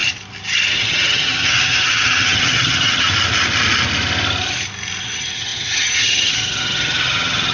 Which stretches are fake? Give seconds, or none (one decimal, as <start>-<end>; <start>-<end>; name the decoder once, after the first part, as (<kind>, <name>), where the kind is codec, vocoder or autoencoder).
0.7-3.1 (vocoder, HiFi-GAN); 5.0-7.5